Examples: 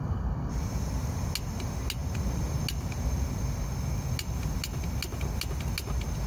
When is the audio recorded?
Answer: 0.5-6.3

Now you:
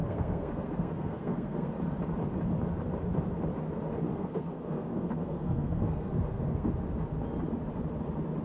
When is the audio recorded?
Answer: 1.8-4.1; 6.7-8.4

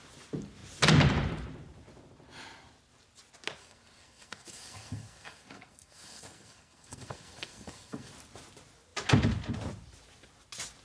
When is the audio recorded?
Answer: 0.0-3.6; 8.1-10.8

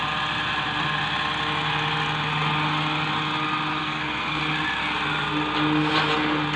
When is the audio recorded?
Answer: 0.0-3.8; 4.4-6.6

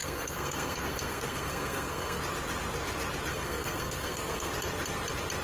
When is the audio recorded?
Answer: 2.2-3.3; 4.5-5.4

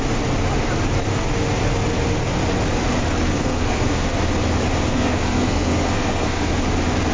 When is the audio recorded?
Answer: 0.0-3.3; 4.3-4.9; 6.5-7.1

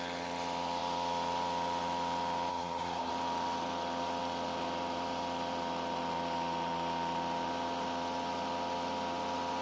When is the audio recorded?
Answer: 0.0-2.5; 3.1-9.6